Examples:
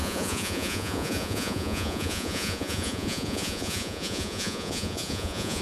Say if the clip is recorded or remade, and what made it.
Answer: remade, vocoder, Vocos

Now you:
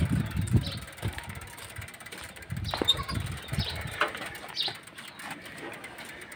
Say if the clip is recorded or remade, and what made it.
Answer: recorded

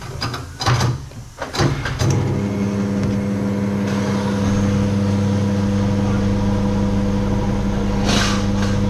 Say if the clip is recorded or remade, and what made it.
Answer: recorded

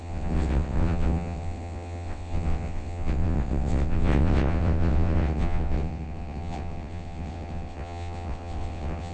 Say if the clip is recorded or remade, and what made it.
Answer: remade, vocoder, WaveNeXt